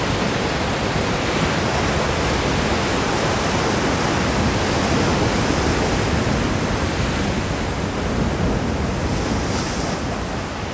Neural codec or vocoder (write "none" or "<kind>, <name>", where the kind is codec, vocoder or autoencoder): none